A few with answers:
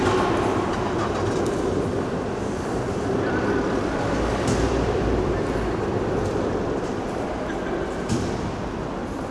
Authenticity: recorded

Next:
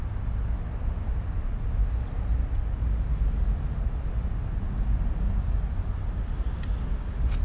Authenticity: recorded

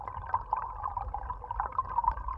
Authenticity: recorded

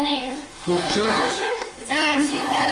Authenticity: remade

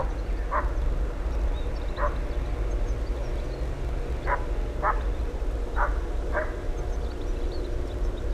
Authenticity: recorded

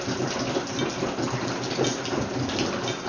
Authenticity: recorded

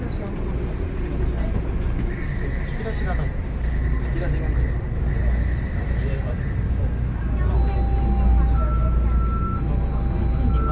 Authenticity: recorded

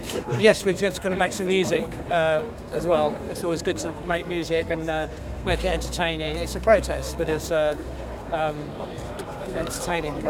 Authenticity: remade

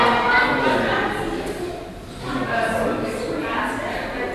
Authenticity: recorded